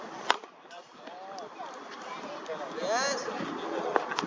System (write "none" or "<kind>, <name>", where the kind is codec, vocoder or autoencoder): none